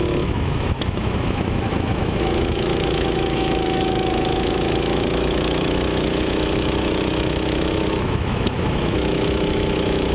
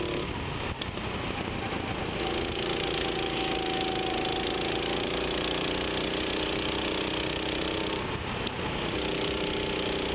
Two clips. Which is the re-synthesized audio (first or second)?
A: first